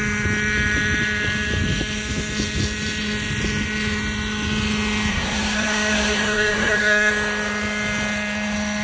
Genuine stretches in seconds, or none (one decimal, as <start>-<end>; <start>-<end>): 0.0-5.1; 7.1-8.8